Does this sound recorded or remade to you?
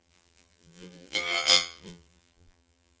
remade